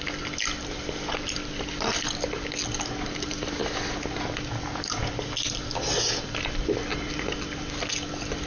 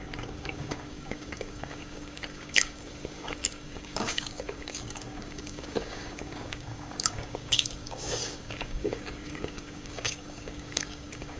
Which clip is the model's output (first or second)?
second